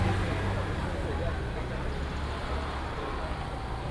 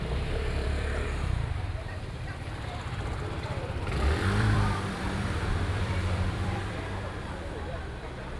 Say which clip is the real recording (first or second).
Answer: first